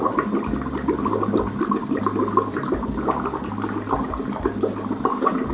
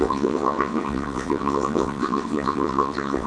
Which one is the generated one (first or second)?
second